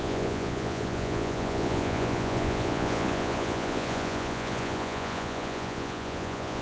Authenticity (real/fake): fake